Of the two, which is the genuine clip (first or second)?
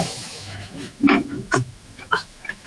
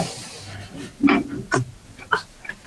second